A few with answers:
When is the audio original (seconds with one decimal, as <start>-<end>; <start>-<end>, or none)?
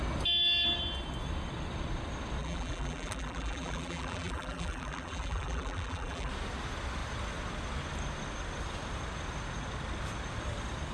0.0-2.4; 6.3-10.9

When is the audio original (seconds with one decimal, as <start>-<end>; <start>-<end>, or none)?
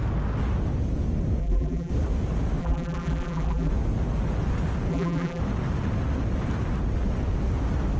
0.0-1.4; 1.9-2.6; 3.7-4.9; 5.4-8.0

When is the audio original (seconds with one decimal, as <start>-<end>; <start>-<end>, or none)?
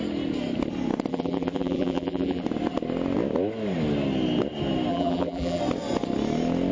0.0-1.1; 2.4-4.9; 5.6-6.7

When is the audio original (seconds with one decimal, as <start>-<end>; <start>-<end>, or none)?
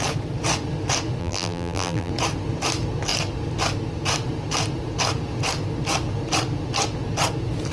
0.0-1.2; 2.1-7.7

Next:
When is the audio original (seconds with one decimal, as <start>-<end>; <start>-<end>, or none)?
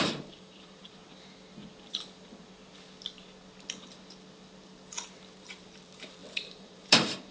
1.0-5.4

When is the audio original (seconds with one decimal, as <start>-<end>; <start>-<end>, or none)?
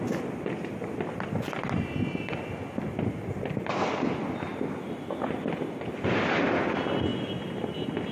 0.0-4.5; 5.5-8.1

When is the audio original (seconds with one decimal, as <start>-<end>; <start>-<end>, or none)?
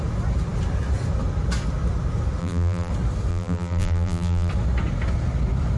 0.0-2.4; 2.9-3.3; 4.5-5.8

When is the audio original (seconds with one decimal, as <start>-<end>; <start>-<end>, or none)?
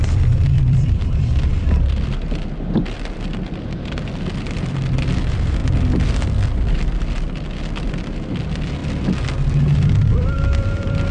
5.6-7.9